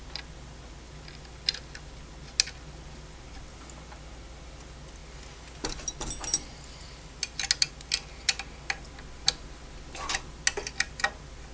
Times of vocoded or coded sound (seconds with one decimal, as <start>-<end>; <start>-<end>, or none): none